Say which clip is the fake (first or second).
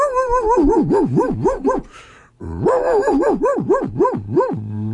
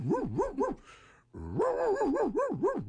first